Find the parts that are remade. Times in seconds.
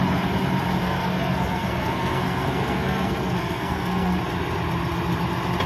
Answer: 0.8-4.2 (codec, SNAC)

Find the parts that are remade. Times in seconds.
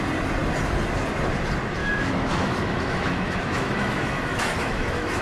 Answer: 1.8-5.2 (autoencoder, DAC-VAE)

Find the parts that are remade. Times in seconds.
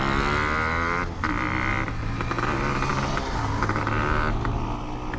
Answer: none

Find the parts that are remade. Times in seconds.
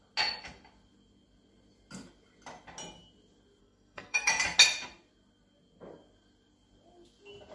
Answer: 3.6-4.3 (codec, SNAC)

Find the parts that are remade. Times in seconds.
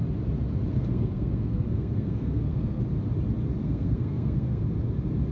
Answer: 0.7-2.8 (codec, SNAC); 3.6-4.6